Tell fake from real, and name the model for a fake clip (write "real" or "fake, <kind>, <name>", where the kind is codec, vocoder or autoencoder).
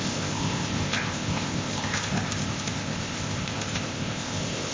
fake, codec, ZipCodec